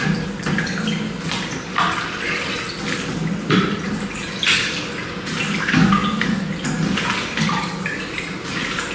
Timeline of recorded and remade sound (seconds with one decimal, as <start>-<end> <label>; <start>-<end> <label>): 0.0-8.9 recorded